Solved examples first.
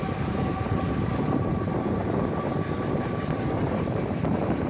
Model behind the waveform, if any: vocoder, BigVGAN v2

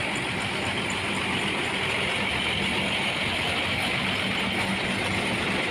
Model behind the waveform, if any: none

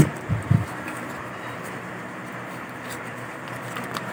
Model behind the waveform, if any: vocoder, BigVGAN v2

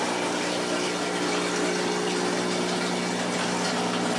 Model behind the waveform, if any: none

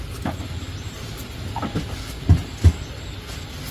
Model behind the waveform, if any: none